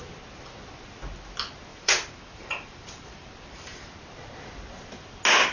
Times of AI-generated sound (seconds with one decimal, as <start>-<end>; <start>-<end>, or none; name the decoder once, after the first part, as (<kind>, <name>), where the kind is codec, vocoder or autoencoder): 1.7-4.0 (vocoder, BigVGAN v2)